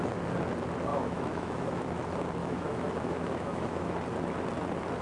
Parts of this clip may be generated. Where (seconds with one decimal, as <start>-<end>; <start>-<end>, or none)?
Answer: 0.9-1.8; 2.4-4.0